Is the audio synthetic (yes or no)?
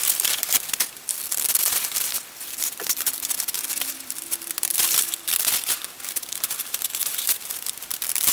yes